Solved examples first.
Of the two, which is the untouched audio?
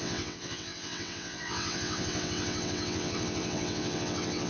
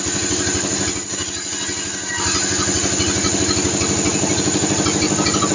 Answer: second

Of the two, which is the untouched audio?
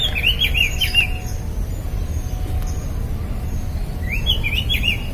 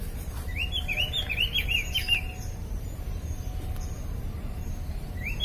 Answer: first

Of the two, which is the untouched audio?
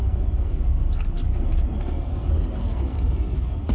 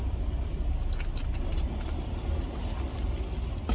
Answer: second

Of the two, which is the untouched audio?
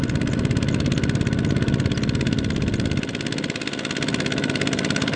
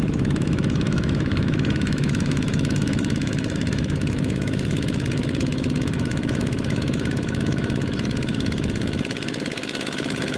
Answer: first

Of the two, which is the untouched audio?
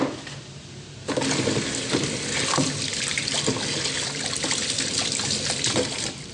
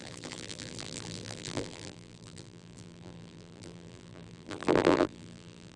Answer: first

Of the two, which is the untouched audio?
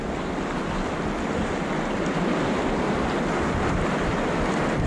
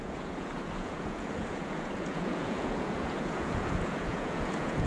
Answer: first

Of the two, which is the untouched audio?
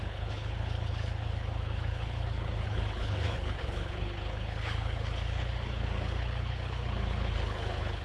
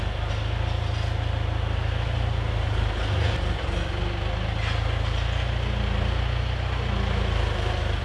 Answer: second